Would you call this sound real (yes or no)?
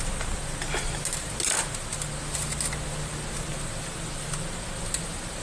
yes